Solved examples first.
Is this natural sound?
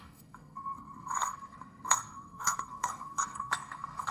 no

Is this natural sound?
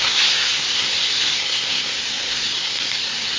no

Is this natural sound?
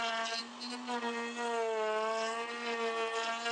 yes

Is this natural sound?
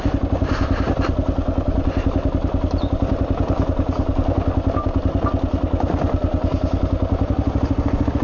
yes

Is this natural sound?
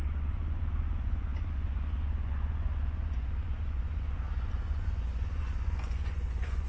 no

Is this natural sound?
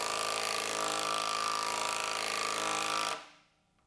no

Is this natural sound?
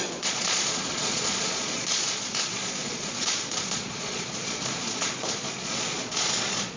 no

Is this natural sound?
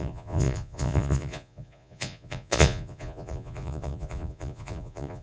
no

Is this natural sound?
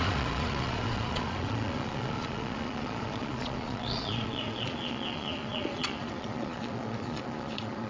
no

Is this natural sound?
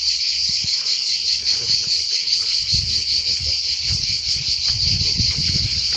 no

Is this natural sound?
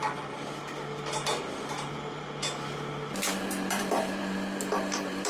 yes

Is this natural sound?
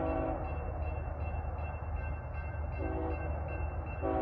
yes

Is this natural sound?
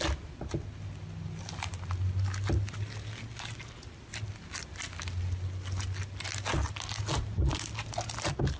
yes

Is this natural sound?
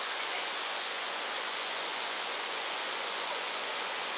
no